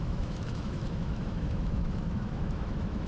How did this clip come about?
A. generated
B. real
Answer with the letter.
A